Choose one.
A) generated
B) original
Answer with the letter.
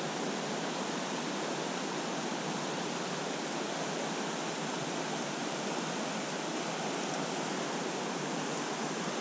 A